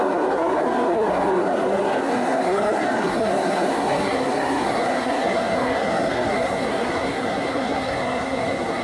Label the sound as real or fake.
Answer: fake